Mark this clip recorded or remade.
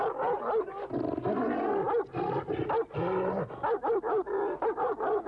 recorded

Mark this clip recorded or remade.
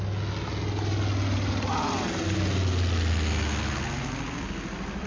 recorded